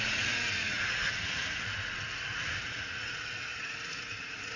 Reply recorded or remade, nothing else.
remade